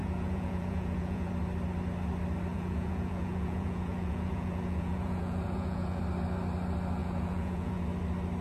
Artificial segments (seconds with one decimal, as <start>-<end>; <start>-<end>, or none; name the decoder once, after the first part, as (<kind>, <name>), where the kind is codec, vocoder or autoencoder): 0.0-1.3 (vocoder, Vocos); 2.5-6.0; 7.0-7.8